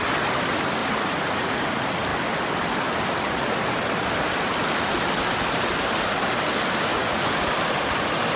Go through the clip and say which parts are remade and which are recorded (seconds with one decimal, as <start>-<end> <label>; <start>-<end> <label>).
0.0-0.8 recorded; 0.8-1.7 remade; 1.7-6.9 recorded; 6.9-7.5 remade; 7.5-8.4 recorded